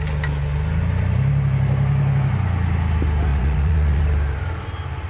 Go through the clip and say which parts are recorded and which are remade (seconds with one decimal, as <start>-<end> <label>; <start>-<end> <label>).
0.0-3.3 recorded; 3.3-4.0 remade; 4.0-5.1 recorded